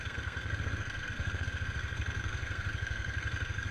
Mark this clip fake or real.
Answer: fake